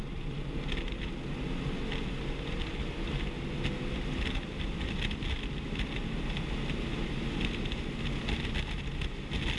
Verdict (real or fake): real